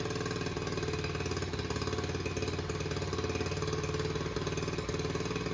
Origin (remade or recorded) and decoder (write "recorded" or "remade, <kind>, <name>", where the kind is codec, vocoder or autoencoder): recorded